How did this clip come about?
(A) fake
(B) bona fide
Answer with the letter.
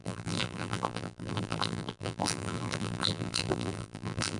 A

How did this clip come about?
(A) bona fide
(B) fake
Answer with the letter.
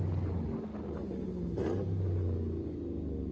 A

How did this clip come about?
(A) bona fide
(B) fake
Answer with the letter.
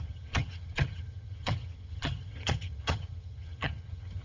B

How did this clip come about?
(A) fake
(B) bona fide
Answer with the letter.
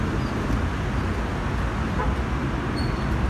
B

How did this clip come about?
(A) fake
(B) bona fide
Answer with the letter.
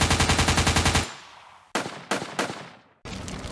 B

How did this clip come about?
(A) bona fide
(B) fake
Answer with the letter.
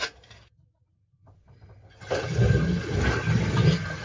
A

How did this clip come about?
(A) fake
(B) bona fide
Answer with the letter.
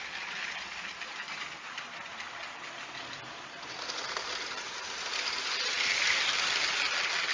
B